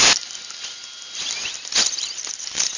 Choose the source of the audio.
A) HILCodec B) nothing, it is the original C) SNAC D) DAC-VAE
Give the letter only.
B